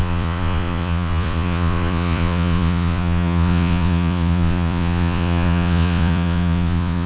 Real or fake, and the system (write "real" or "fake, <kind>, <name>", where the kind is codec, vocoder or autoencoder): fake, vocoder, Vocos